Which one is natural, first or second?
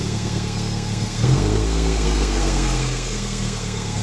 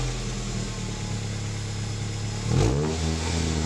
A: second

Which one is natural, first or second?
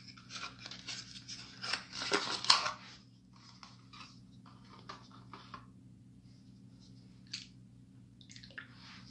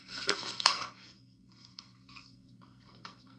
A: first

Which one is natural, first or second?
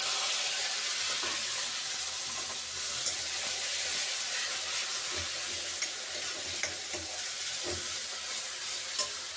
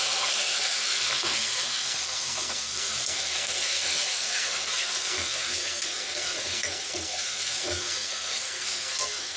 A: first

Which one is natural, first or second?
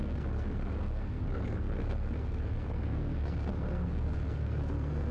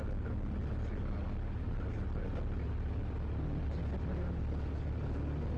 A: second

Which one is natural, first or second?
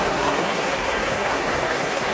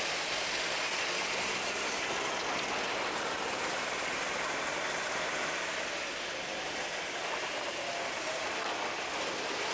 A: second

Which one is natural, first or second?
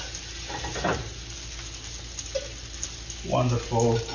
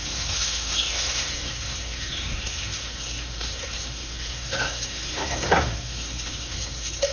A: first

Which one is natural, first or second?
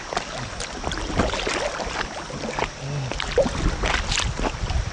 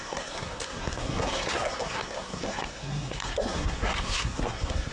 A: first